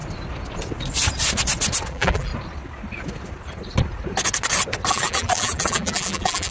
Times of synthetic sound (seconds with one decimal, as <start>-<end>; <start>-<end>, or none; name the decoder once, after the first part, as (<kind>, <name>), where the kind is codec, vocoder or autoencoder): 1.9-2.3 (vocoder, BigVGAN v2); 4.9-6.5